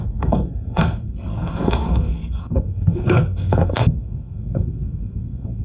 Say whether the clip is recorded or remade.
remade